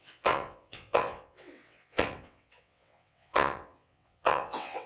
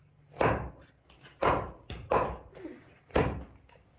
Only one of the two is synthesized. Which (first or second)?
first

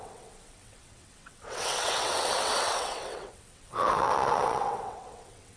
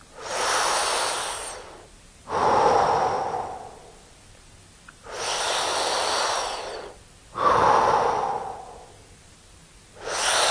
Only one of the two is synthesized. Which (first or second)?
first